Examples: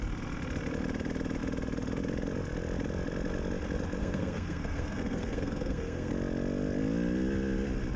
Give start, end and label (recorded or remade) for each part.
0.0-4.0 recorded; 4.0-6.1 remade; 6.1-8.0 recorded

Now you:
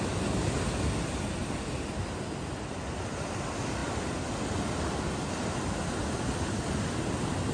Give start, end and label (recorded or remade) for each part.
0.0-7.5 recorded

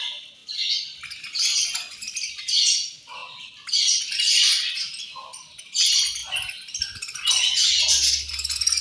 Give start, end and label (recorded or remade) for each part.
0.0-8.8 recorded

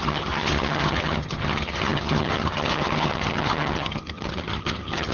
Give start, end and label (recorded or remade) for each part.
0.0-5.1 remade